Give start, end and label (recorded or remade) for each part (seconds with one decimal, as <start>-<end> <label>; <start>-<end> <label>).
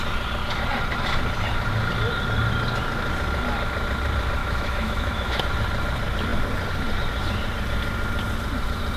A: 0.0-4.4 recorded; 4.4-5.4 remade; 5.4-9.0 recorded